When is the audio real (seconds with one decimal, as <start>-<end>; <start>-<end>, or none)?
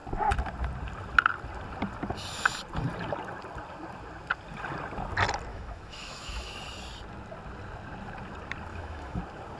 0.0-5.5; 6.5-8.7; 9.2-9.6